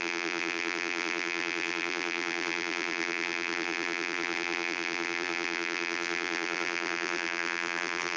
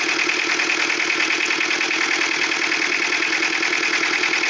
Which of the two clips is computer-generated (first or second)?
first